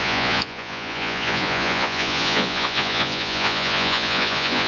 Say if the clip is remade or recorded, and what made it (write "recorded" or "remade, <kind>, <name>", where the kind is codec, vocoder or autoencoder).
remade, vocoder, Vocos